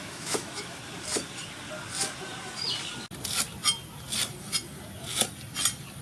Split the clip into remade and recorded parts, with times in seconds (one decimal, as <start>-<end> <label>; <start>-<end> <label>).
0.0-0.8 remade; 0.8-6.0 recorded